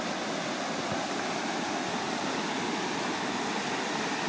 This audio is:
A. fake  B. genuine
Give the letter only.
B